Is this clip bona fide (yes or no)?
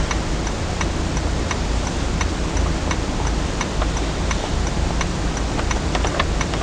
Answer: yes